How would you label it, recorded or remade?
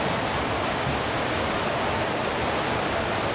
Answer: recorded